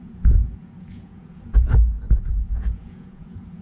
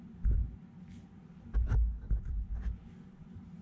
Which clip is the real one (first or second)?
second